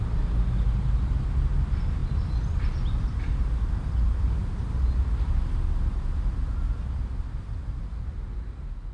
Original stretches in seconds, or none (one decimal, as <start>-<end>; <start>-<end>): 0.0-2.0; 3.5-8.9